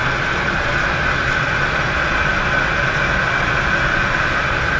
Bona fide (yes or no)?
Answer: yes